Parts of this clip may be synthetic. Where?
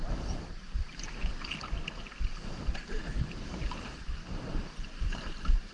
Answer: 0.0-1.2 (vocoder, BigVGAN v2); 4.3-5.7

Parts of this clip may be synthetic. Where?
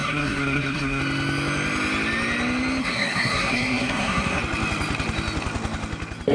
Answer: 0.0-1.0 (codec, SNAC); 2.8-4.4